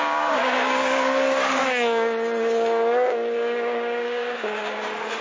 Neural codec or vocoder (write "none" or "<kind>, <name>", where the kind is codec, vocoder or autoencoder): codec, DAC